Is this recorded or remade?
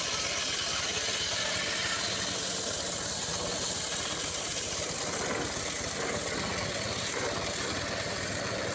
recorded